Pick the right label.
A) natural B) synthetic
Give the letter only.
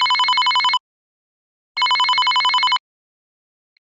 A